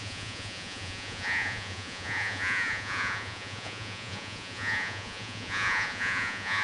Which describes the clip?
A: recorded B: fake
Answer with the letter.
B